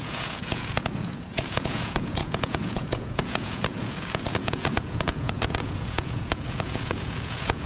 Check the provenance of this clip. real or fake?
fake